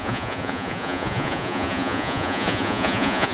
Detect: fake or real fake